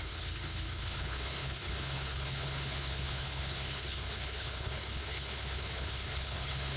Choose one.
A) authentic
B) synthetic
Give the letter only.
B